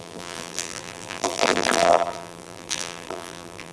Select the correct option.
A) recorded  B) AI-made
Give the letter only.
B